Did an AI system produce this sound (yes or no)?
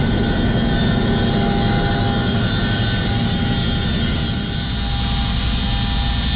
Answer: no